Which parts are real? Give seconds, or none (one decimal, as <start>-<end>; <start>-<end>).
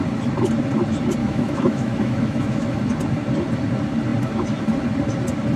0.0-1.2; 2.8-5.6